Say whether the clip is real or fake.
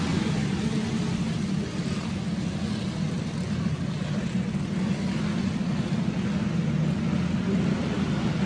real